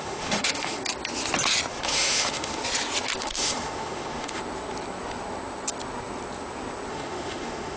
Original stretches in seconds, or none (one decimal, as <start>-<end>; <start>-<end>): 0.8-1.7; 2.6-3.2; 4.4-6.9